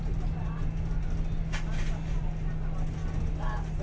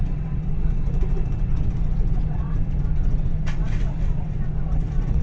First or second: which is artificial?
second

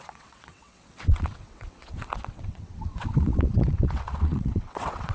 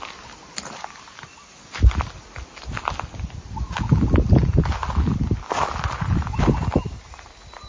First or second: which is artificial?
first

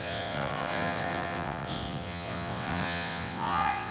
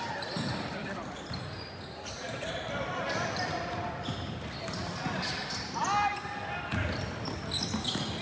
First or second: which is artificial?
first